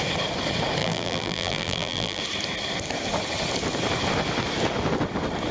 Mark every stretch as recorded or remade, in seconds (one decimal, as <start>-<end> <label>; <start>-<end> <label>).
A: 0.0-0.8 recorded; 0.8-2.2 remade; 2.2-5.5 recorded